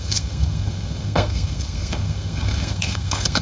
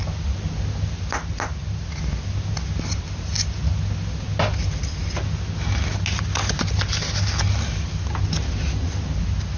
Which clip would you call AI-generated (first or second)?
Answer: first